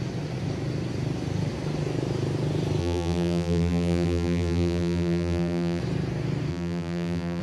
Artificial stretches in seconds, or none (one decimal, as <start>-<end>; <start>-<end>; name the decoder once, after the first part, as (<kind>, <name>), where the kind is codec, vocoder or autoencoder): 2.8-5.8 (vocoder, BigVGAN v2); 6.5-7.4